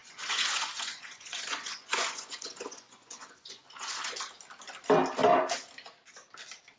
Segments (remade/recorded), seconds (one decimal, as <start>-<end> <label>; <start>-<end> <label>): 0.0-4.1 remade; 4.1-6.8 recorded